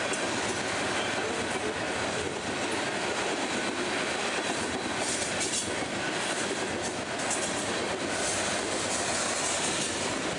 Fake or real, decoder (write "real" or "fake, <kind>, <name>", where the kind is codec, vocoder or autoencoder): real